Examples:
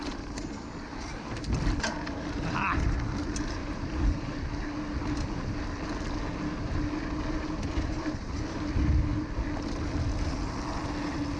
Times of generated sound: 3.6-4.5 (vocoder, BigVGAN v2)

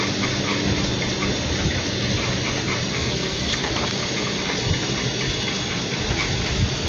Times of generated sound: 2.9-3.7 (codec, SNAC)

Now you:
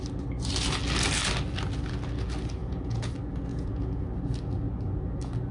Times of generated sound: 2.6-3.1 (vocoder, Vocos); 3.5-4.0